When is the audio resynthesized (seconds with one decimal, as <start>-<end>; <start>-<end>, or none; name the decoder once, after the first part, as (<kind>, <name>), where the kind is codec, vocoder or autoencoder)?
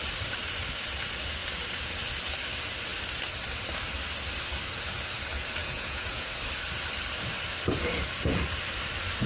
5.6-6.3 (vocoder, Vocos)